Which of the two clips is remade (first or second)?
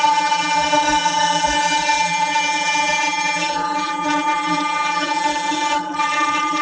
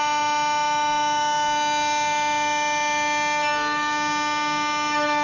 first